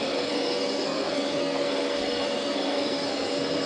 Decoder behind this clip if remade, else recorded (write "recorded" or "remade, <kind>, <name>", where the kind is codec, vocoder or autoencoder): remade, codec, SNAC